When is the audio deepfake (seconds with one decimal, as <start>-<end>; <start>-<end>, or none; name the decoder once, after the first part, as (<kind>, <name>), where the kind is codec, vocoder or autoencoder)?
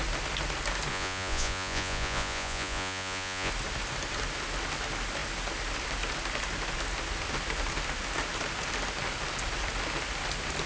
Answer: 0.9-3.5 (vocoder, Vocos)